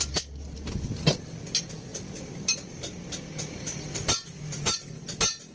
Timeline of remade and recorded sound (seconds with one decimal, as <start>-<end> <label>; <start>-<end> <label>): 0.0-5.5 recorded